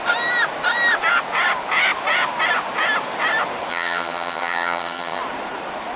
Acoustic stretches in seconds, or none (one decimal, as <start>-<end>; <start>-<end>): 0.0-3.7; 5.2-6.0